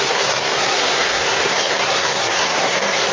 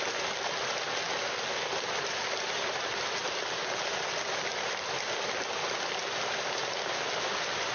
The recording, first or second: second